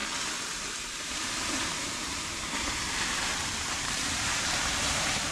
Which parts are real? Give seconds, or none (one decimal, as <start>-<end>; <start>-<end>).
0.0-1.2